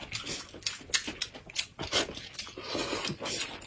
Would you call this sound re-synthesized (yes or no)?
no